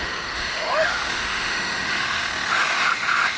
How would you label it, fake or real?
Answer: fake